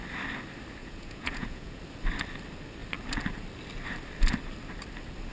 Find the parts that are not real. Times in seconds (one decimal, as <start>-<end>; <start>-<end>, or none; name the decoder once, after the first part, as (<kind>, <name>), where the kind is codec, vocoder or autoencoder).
0.8-1.8 (vocoder, Vocos)